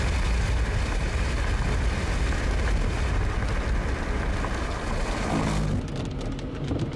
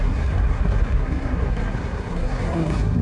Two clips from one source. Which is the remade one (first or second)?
second